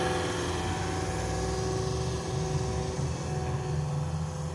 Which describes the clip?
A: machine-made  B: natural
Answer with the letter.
B